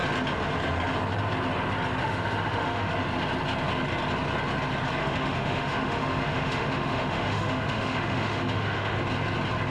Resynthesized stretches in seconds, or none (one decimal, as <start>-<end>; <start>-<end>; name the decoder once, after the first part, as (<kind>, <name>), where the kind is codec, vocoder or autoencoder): 2.0-2.9 (autoencoder, DAC-VAE); 5.0-9.0